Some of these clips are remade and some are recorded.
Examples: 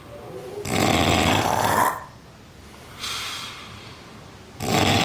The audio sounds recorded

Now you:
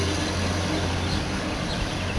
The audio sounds recorded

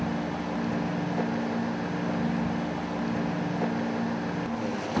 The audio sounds recorded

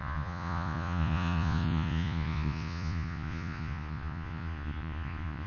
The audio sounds remade